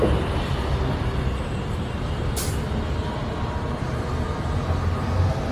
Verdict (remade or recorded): recorded